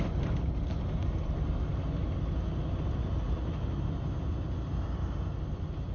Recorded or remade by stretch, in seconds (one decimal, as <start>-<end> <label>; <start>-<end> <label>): 0.0-5.9 recorded